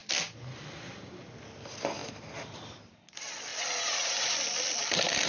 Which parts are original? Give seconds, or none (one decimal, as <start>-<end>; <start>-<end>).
0.0-5.3